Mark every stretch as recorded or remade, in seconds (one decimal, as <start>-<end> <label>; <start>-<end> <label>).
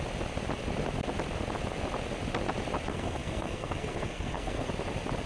0.0-2.9 recorded; 2.9-4.7 remade; 4.7-5.3 recorded